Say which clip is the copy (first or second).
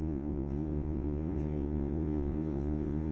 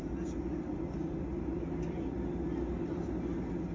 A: first